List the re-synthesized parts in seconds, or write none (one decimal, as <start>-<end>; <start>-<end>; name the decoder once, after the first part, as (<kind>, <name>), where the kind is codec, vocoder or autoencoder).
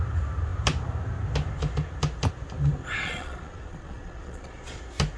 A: 2.8-4.8 (vocoder, Vocos)